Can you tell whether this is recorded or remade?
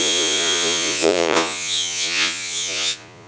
remade